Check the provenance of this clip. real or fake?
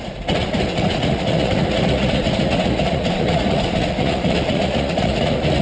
fake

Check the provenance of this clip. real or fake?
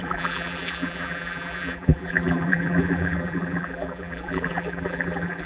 fake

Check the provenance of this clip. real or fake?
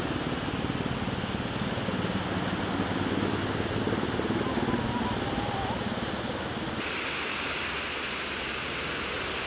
real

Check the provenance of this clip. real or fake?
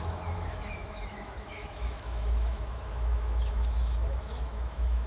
fake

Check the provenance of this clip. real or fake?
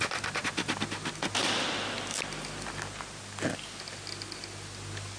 real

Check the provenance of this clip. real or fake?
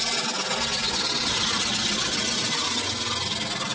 real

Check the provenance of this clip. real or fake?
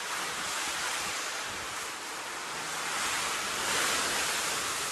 real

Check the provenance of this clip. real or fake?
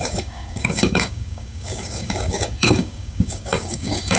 fake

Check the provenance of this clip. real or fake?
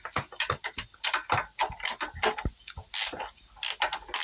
real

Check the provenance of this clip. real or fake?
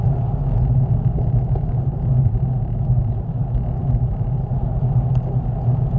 real